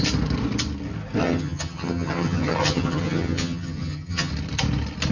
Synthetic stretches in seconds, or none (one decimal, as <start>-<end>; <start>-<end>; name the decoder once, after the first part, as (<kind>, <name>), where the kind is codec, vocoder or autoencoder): 1.2-4.3 (vocoder, HiFi-GAN)